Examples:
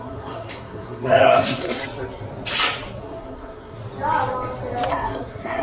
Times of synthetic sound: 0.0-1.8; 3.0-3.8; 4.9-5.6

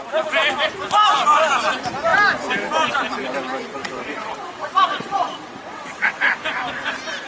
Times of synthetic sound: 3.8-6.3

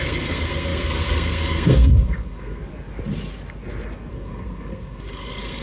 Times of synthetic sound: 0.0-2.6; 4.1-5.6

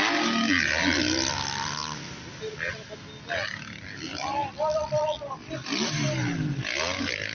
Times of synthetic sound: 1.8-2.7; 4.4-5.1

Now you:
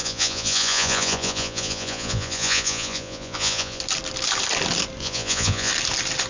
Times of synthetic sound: 0.0-3.8; 5.0-5.7

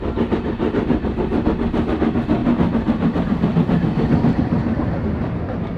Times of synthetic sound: none